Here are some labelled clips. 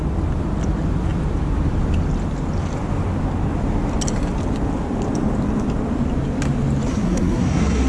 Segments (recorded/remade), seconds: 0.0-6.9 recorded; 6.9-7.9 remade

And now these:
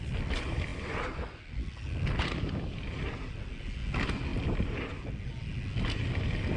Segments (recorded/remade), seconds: 0.0-6.6 recorded

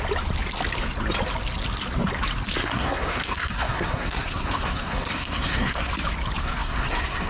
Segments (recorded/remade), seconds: 0.0-2.6 recorded; 2.6-5.9 remade; 5.9-6.4 recorded; 6.4-7.3 remade

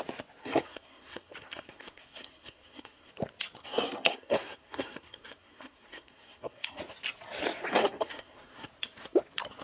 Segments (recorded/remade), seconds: 0.0-0.4 recorded; 0.4-3.1 remade; 3.1-3.6 recorded; 3.6-6.8 remade; 6.8-7.7 recorded; 7.7-8.7 remade; 8.7-9.6 recorded

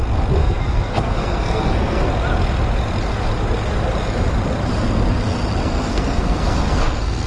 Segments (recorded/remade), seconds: 0.0-0.4 recorded; 0.4-2.1 remade; 2.1-5.6 recorded; 5.6-7.3 remade

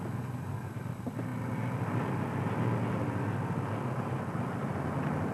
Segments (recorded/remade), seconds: 0.0-5.3 recorded

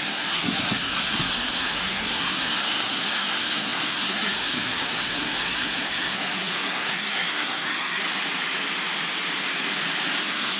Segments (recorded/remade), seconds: 0.0-8.0 remade; 8.0-10.2 recorded; 10.2-10.6 remade

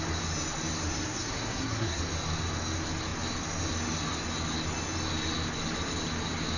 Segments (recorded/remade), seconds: 0.0-1.0 recorded; 1.0-2.0 remade; 2.0-6.6 recorded